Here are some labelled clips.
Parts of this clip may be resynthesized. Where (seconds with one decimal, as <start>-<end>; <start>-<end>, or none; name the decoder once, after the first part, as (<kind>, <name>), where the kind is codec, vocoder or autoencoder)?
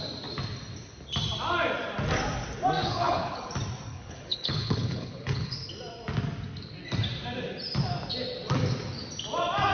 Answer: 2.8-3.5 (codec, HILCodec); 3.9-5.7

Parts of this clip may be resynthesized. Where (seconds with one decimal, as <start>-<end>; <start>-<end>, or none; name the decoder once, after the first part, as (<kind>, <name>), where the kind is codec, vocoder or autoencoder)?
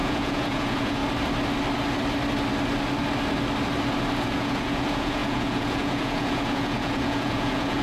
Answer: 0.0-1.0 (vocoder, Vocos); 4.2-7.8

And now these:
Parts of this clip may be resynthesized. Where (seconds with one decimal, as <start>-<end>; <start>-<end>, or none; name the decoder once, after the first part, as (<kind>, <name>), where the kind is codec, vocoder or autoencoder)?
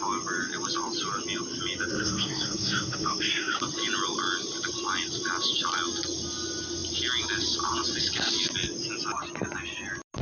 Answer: 1.9-3.6 (codec, SNAC)